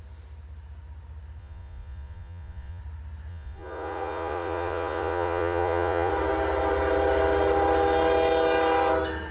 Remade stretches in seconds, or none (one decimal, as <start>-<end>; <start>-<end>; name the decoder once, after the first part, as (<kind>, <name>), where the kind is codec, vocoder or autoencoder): 1.4-2.8 (vocoder, Vocos); 3.3-6.1